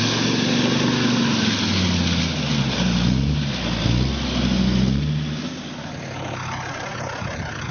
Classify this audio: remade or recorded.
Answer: recorded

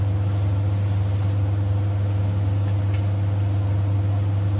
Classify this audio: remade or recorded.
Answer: recorded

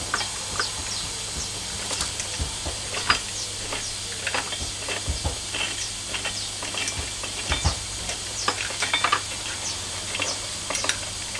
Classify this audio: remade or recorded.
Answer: recorded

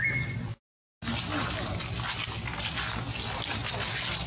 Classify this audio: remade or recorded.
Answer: recorded